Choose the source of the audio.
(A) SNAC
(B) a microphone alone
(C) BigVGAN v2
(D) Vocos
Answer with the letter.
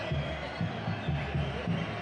B